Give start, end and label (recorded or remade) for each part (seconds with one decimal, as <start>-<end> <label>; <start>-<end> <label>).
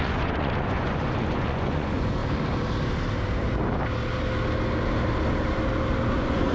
0.0-2.2 remade; 2.2-6.1 recorded; 6.1-6.5 remade